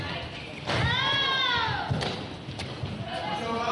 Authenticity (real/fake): real